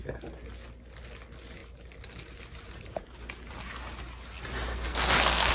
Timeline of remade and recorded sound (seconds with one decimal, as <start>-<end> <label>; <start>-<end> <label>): 0.0-4.7 recorded; 4.7-5.5 remade